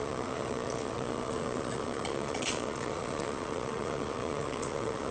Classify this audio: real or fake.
fake